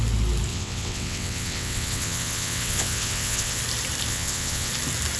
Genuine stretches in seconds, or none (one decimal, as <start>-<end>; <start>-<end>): 0.0-0.5; 3.6-4.1; 4.7-5.2